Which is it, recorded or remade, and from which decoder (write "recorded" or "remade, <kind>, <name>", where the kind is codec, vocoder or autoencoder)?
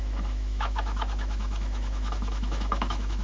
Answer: remade, autoencoder, DAC-VAE